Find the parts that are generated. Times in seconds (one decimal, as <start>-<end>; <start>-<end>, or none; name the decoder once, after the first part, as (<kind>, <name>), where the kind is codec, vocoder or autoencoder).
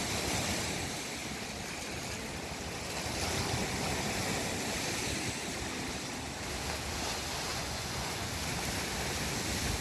7.5-8.3 (vocoder, Vocos)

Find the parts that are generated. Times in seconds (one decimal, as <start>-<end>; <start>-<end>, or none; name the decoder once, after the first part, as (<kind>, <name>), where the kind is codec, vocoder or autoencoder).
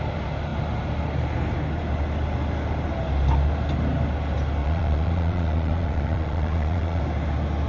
4.6-7.0 (vocoder, Vocos)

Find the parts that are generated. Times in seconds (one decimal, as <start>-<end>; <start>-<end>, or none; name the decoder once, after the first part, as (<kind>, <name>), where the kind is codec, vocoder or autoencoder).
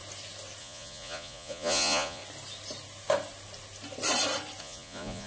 0.6-2.2 (vocoder, Vocos); 4.6-5.3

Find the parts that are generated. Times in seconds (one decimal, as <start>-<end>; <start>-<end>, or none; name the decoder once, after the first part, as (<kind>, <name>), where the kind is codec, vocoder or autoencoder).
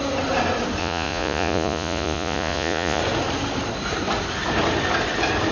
0.8-3.0 (vocoder, Vocos)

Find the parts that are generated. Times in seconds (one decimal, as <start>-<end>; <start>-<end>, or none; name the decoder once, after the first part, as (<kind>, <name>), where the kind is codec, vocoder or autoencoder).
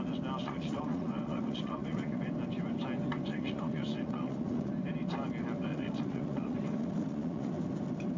0.4-2.2 (vocoder, Vocos); 3.3-4.7; 5.7-7.5